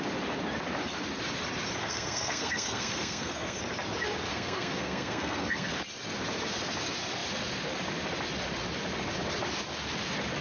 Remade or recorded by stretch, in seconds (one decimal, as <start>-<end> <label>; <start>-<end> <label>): 0.0-1.8 recorded; 1.8-3.6 remade; 3.6-4.3 recorded; 4.3-5.7 remade; 5.7-10.4 recorded